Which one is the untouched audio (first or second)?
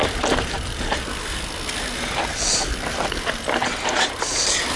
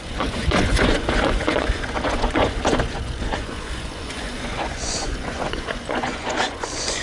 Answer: first